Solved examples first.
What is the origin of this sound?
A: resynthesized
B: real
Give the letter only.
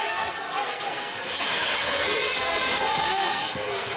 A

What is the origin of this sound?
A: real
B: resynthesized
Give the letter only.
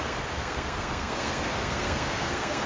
B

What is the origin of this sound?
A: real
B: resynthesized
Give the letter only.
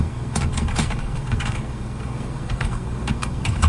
B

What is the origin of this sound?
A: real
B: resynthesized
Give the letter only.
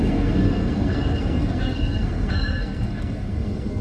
B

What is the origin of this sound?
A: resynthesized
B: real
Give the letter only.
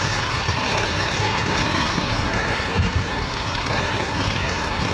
A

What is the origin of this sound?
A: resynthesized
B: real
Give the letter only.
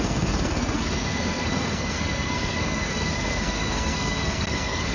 A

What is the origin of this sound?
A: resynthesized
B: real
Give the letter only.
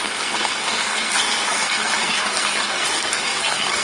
A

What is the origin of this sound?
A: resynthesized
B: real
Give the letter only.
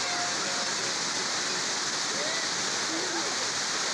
B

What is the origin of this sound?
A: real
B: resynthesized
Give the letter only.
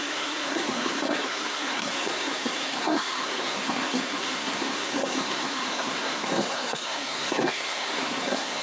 B